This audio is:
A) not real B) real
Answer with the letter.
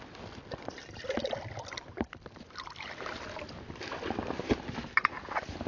B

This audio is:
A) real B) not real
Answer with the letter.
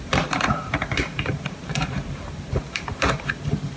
B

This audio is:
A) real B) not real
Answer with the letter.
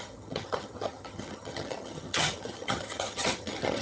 B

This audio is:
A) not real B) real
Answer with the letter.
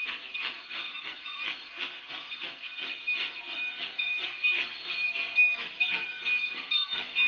A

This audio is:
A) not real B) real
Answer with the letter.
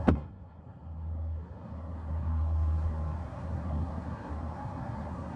A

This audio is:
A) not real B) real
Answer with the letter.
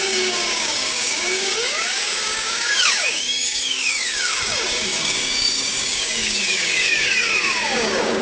A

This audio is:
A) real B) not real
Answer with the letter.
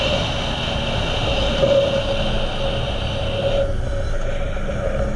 A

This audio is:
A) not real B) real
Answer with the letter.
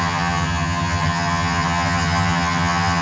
A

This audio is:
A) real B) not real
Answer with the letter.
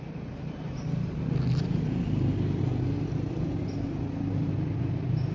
A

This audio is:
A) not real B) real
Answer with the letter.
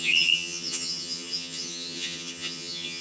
A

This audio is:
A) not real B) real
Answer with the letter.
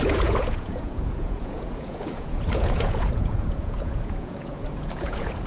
A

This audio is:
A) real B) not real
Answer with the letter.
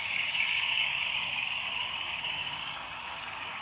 B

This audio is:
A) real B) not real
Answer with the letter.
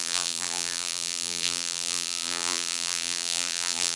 B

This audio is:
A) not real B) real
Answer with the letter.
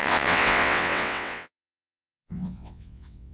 A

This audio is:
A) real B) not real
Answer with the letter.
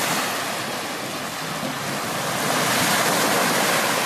A